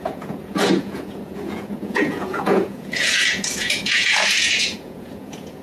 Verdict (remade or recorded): remade